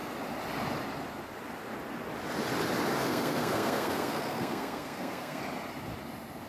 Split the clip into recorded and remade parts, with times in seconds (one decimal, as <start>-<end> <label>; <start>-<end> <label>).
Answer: 0.0-3.0 recorded; 3.0-5.4 remade; 5.4-6.5 recorded